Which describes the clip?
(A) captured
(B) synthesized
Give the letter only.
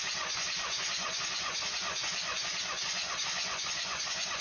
B